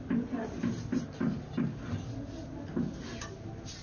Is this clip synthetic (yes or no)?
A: no